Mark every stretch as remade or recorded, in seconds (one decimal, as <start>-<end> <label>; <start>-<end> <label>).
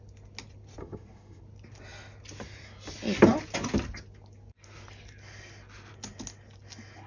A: 0.0-0.8 recorded; 0.8-1.4 remade; 1.4-7.1 recorded